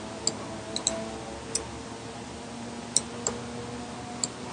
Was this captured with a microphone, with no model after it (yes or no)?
yes